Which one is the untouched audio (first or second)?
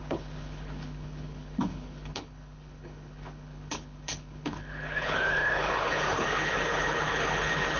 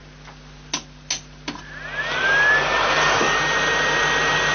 second